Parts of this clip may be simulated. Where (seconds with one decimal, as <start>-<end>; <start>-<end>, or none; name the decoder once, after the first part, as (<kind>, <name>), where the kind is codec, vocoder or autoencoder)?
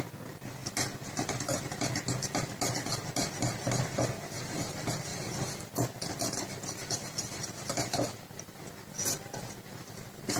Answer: none